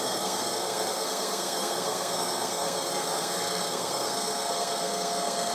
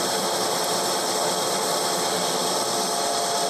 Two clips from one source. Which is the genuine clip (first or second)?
second